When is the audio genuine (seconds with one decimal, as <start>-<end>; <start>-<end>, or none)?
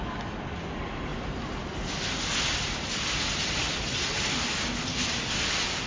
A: 0.0-5.9